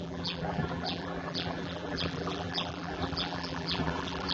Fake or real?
fake